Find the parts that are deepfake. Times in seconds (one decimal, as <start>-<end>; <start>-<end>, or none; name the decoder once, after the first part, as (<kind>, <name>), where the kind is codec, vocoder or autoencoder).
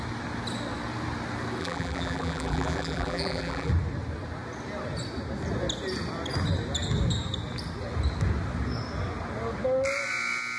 1.6-3.7 (vocoder, BigVGAN v2)